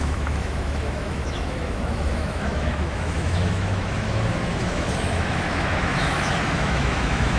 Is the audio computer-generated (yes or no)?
yes